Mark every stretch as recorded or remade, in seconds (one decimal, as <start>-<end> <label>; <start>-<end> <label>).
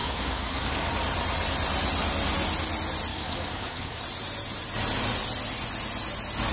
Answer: 0.0-0.9 remade; 0.9-3.1 recorded; 3.1-4.0 remade; 4.0-6.5 recorded